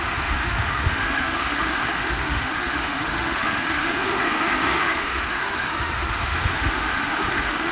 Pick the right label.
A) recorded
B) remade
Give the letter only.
B